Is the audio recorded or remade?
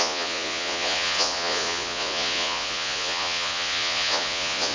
remade